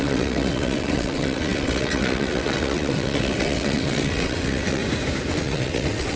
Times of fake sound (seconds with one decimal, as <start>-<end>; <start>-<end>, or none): 0.0-4.8; 5.3-6.2